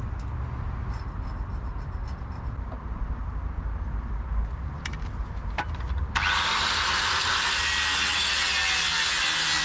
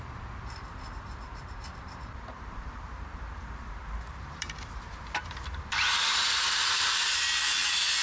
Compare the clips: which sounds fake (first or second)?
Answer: second